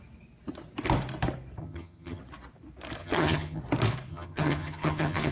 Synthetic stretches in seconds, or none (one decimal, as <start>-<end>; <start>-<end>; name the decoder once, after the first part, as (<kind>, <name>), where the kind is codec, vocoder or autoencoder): 1.6-2.2 (vocoder, HiFi-GAN); 3.0-3.6; 4.1-5.3